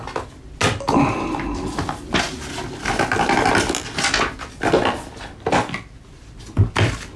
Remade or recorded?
recorded